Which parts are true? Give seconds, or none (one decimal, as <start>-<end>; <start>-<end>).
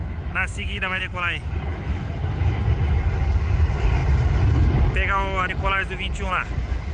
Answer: 1.0-1.7; 2.6-6.9